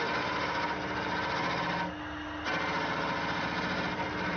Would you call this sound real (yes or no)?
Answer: yes